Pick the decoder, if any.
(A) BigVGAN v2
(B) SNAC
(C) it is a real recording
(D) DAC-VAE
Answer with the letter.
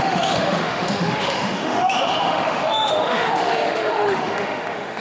D